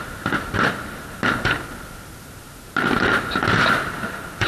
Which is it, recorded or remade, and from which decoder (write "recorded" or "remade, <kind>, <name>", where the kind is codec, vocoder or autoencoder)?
recorded